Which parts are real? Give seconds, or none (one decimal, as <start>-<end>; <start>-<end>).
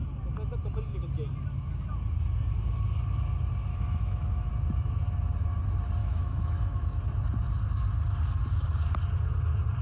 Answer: 0.0-3.7; 4.5-6.0; 7.0-9.8